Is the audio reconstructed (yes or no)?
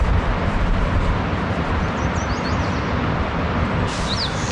no